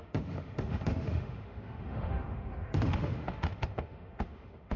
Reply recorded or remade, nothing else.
remade